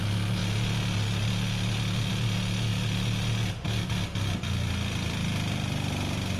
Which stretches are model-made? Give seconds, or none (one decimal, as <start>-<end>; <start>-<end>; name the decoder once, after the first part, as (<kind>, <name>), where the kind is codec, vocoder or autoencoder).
none